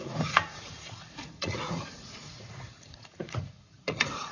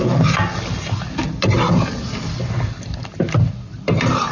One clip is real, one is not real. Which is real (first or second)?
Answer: second